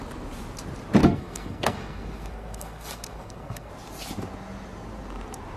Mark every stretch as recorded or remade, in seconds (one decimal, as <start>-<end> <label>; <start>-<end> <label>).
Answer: 0.0-1.0 recorded; 1.0-3.7 remade; 3.7-5.6 recorded